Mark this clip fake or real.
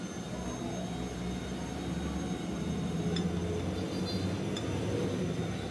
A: real